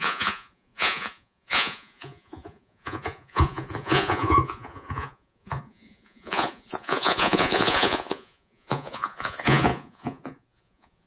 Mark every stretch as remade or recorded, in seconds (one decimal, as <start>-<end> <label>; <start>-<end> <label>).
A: 0.0-11.1 remade